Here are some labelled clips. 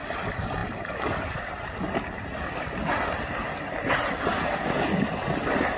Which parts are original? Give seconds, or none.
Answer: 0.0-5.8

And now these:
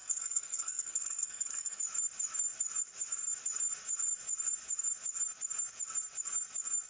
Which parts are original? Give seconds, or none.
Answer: 1.8-6.9

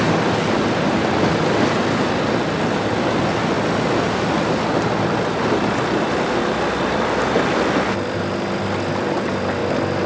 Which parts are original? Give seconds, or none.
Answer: 0.0-9.6

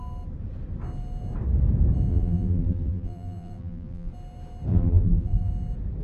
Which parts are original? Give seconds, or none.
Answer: 0.0-2.1; 4.1-4.7; 5.5-6.0

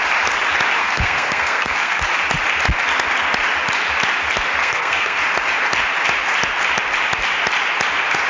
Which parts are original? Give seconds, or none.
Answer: 0.0-0.8; 2.0-4.6; 5.2-8.3

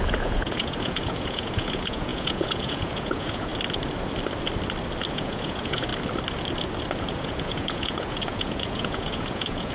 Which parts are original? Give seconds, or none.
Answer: 3.5-5.1; 5.9-7.0

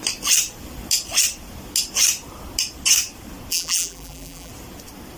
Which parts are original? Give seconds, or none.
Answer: 0.0-3.5; 4.5-5.2